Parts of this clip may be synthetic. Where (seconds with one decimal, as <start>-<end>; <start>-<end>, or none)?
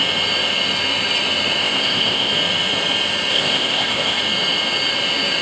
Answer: 1.6-2.3; 3.3-4.2